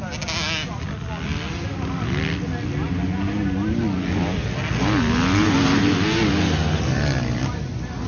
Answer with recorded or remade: recorded